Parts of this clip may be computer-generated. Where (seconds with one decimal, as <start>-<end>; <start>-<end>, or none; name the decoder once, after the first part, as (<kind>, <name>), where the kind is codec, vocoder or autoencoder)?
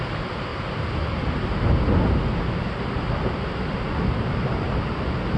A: none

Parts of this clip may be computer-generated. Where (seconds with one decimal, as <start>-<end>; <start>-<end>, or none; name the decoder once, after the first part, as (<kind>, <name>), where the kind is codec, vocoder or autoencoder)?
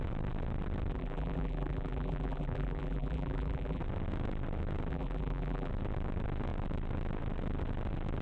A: 0.9-3.8 (vocoder, BigVGAN v2); 4.9-5.7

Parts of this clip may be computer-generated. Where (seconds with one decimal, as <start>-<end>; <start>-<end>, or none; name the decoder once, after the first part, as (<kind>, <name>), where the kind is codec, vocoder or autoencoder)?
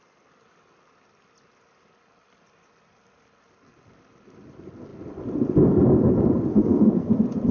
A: 6.5-7.1 (codec, SNAC)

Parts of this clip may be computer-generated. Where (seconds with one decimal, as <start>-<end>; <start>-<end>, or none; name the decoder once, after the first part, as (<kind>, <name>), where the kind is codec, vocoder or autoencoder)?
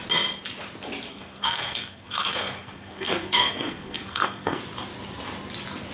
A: 1.1-4.6 (codec, SNAC)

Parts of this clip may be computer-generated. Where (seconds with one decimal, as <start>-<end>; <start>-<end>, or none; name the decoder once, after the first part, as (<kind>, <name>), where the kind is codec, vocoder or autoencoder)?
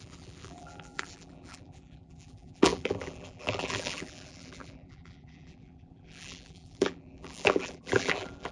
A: 0.0-8.5 (vocoder, BigVGAN v2)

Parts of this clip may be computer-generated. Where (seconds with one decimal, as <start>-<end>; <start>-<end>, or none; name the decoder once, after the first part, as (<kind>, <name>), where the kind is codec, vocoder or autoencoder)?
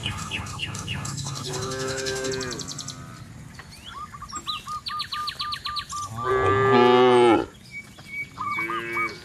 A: 0.0-2.3 (codec, DAC)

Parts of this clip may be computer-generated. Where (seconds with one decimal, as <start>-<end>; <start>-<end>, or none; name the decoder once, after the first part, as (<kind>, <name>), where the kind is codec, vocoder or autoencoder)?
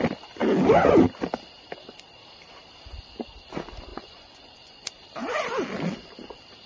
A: 3.9-4.9 (vocoder, Vocos)